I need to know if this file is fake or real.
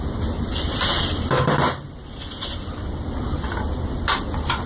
real